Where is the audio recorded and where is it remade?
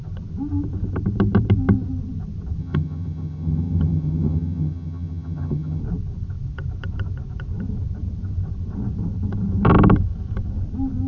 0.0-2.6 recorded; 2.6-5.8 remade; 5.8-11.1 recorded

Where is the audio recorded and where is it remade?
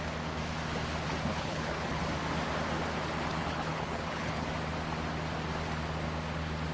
0.0-1.3 recorded; 1.3-2.0 remade; 2.0-3.4 recorded; 3.4-4.5 remade; 4.5-6.7 recorded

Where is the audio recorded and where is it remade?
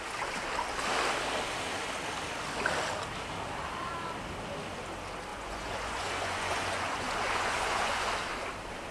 0.0-5.3 recorded; 5.3-8.1 remade; 8.1-8.9 recorded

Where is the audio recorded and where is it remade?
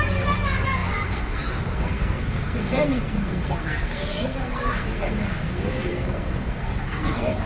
0.0-7.5 remade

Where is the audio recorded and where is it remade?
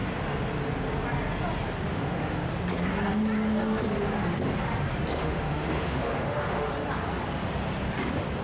0.0-1.9 recorded; 1.9-2.4 remade; 2.4-5.2 recorded; 5.2-6.7 remade; 6.7-8.4 recorded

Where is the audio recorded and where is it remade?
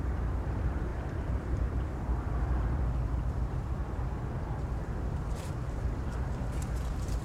0.0-3.8 remade; 3.8-4.6 recorded; 4.6-7.2 remade